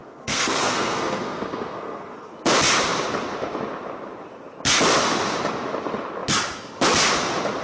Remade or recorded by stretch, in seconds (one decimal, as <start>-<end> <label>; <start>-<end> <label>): 0.0-2.3 remade; 2.3-7.6 recorded